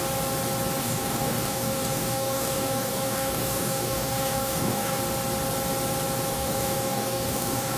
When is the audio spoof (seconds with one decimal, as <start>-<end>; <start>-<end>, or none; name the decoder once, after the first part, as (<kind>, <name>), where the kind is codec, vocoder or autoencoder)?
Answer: 0.8-5.0 (codec, DAC); 6.3-7.8